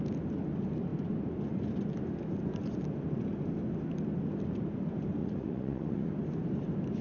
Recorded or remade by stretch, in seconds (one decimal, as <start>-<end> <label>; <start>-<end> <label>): 0.0-5.2 recorded; 5.2-6.1 remade; 6.1-7.0 recorded